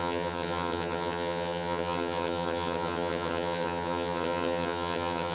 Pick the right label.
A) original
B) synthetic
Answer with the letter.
B